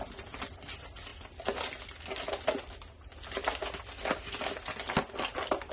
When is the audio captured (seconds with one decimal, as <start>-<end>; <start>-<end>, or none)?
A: 0.0-5.7